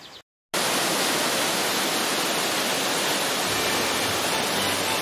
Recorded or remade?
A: recorded